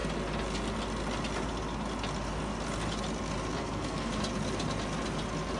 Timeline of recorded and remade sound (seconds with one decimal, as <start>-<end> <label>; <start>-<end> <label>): 0.0-3.6 recorded; 3.6-4.1 remade; 4.1-5.6 recorded